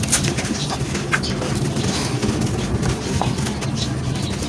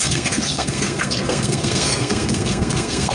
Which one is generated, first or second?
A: second